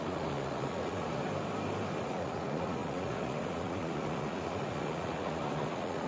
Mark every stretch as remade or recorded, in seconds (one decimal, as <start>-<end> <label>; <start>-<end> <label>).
0.0-1.2 remade; 1.2-2.0 recorded; 2.0-6.1 remade